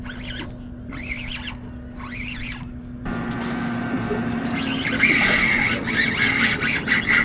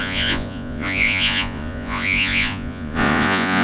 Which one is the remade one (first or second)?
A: second